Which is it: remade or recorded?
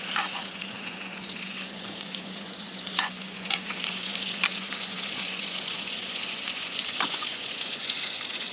remade